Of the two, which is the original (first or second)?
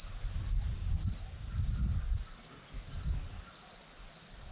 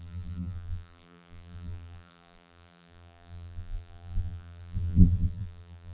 first